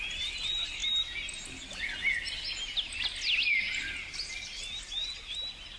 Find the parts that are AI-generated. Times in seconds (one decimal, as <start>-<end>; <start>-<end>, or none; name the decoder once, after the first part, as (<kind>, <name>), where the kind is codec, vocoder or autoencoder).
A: none